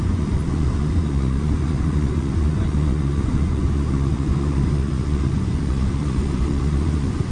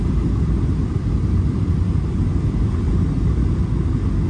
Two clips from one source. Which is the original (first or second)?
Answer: second